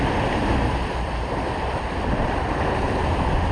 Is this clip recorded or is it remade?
remade